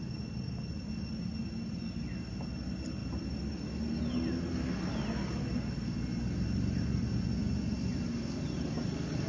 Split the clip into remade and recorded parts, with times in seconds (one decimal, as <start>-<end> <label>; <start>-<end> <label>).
0.0-9.3 recorded